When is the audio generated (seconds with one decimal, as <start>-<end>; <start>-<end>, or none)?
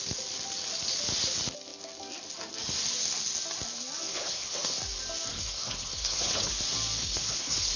4.1-4.8; 5.3-6.5; 7.0-7.8